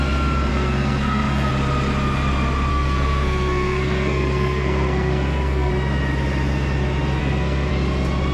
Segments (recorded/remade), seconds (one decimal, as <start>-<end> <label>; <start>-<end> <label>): 0.0-0.5 recorded; 0.5-1.5 remade; 1.5-2.7 recorded; 2.7-5.7 remade; 5.7-7.2 recorded; 7.2-7.7 remade; 7.7-8.3 recorded